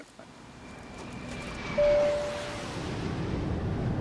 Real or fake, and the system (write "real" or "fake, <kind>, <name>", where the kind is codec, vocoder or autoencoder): real